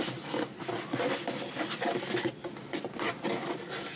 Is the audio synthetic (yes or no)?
no